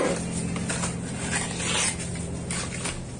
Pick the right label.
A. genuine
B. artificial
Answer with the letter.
A